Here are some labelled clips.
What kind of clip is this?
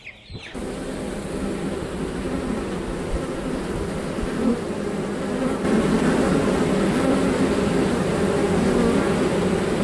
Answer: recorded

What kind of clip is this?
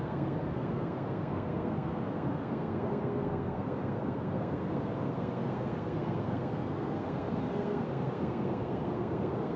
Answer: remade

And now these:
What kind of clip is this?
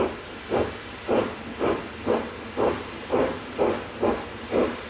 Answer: recorded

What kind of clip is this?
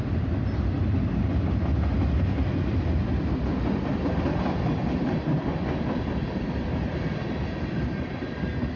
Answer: recorded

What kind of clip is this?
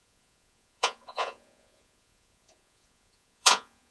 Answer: remade